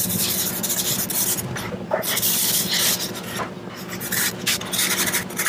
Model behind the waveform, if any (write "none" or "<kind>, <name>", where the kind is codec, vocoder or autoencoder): none